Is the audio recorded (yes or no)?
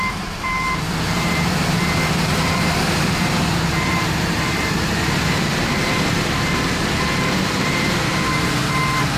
no